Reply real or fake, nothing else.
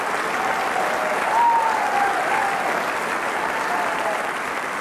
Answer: real